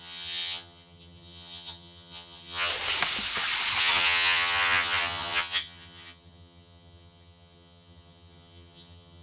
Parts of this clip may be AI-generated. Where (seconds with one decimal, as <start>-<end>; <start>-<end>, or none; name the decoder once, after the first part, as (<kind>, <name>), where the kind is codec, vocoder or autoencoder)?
0.0-2.7 (vocoder, HiFi-GAN); 3.8-9.2

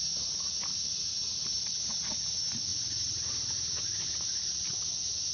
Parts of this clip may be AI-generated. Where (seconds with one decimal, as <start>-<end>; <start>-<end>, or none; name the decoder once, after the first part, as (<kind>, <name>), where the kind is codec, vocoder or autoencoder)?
none